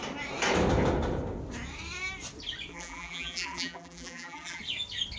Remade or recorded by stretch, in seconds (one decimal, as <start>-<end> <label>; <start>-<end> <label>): 0.0-2.7 recorded; 2.7-4.6 remade; 4.6-5.2 recorded